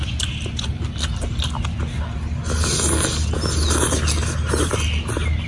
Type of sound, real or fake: real